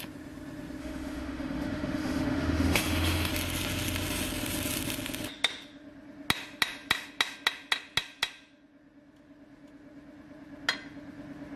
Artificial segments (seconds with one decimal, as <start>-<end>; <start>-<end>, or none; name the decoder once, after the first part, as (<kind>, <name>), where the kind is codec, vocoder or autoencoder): 0.8-3.3 (autoencoder, DAC-VAE)

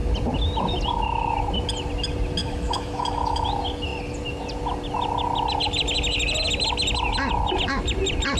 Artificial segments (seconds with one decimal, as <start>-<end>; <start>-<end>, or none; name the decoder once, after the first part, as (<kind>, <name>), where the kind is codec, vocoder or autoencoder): 2.4-3.5 (autoencoder, DAC-VAE)

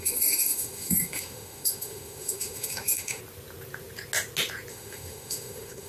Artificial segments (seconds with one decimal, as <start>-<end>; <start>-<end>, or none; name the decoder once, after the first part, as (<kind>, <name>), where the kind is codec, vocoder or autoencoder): 0.0-3.2 (autoencoder, DAC-VAE); 4.7-5.9

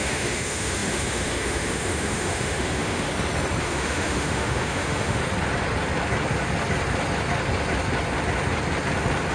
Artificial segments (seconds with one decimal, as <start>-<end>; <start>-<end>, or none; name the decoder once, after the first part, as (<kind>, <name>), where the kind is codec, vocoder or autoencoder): 0.0-3.1 (autoencoder, DAC-VAE); 3.6-5.2

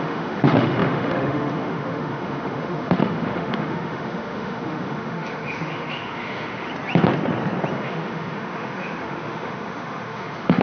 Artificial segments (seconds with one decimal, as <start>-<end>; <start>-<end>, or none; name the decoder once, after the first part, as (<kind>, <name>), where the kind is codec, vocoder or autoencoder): 0.0-6.7 (autoencoder, DAC-VAE); 7.7-10.6